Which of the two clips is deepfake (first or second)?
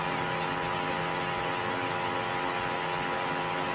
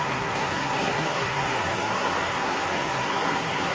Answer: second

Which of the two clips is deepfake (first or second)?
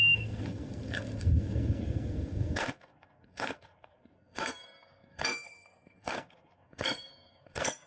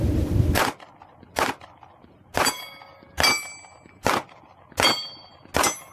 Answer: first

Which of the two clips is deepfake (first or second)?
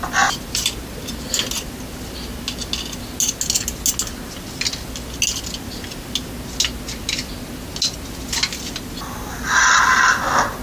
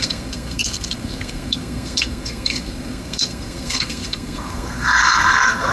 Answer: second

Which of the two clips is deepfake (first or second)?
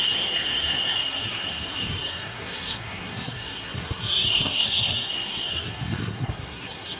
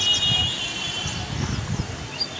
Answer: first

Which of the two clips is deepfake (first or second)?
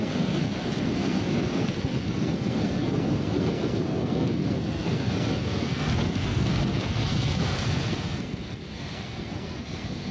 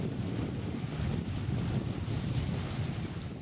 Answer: first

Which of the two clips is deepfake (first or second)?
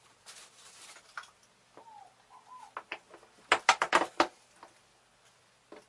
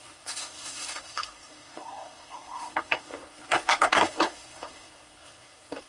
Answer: second